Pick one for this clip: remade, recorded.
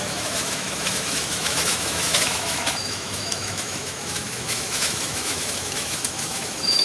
remade